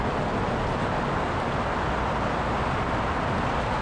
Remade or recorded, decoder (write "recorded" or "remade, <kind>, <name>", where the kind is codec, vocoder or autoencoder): recorded